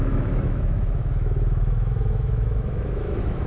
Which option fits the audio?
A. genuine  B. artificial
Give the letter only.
B